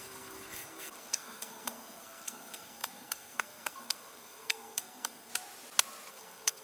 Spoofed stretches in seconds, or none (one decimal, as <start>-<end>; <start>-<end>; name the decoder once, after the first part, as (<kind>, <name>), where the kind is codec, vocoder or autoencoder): 0.0-5.3 (codec, SNAC); 6.1-6.6